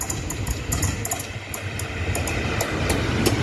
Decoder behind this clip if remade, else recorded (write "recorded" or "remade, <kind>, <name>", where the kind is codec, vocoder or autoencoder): recorded